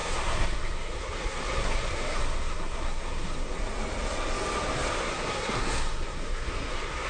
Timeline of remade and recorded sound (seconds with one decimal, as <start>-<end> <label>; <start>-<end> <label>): 0.0-3.6 remade; 3.6-5.0 recorded; 5.0-7.1 remade